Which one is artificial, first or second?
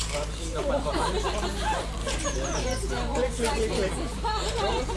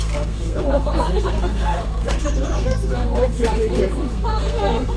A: second